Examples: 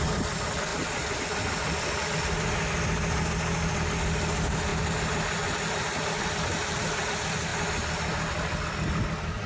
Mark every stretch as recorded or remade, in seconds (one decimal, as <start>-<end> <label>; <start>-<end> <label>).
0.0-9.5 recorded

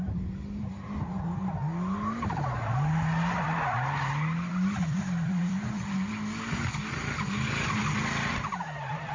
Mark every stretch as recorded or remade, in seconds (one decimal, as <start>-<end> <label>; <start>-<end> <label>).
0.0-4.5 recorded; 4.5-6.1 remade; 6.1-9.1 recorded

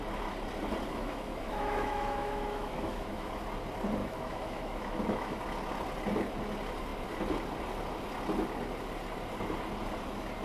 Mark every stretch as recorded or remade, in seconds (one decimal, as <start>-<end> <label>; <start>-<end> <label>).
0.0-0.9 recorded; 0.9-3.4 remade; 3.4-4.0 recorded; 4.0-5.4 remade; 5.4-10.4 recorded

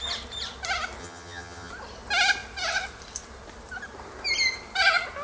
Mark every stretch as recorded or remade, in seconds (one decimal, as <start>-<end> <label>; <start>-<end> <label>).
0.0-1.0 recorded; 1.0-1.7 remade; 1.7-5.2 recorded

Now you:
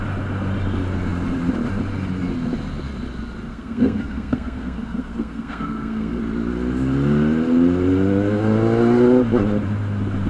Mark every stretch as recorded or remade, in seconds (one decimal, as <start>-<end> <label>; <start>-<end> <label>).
0.0-3.5 recorded; 3.5-6.2 remade; 6.2-10.3 recorded